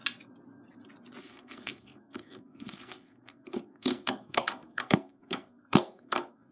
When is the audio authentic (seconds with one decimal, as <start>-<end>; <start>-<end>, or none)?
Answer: 0.0-1.2

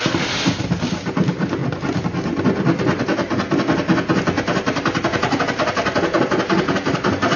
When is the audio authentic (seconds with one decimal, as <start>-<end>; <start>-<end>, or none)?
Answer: 0.0-7.4

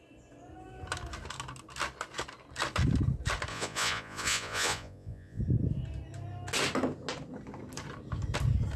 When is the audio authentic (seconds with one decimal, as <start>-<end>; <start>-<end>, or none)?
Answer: 0.0-3.5; 5.4-8.8

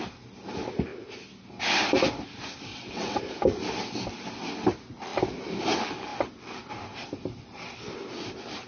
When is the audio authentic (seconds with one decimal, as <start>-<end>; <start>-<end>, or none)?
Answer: 0.0-2.7; 3.2-8.7

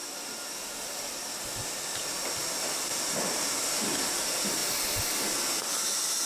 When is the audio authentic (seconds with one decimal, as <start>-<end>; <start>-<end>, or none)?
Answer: 0.0-6.3

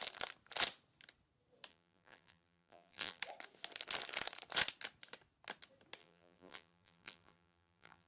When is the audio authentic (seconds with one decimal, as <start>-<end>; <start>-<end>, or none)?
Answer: 0.0-1.7; 3.2-6.0

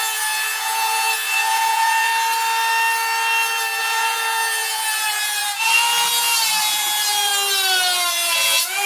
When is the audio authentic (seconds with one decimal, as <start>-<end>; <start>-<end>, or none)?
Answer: 2.1-3.8; 7.3-8.1